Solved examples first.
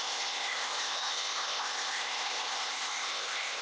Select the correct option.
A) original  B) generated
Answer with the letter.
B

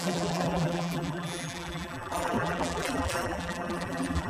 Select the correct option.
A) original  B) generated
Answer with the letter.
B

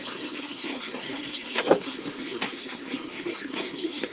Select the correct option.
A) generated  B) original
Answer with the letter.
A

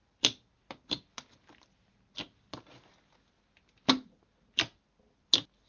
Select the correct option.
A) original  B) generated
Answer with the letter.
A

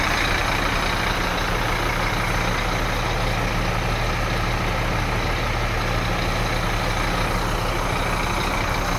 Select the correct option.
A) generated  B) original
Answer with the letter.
B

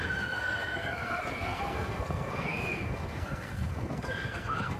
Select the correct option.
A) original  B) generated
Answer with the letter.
B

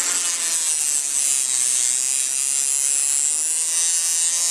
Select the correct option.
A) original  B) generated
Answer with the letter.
A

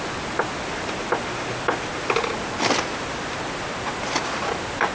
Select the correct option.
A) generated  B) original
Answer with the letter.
B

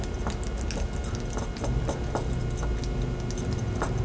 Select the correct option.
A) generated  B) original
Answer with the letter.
B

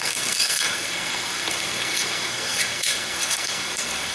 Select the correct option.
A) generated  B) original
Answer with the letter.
A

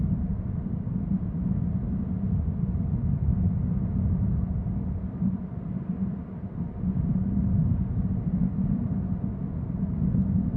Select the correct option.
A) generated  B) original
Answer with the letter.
B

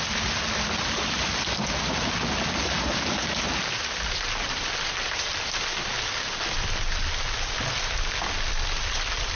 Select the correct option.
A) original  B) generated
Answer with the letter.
A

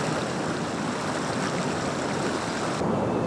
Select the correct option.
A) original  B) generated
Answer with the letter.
A